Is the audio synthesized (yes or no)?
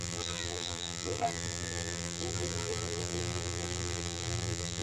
yes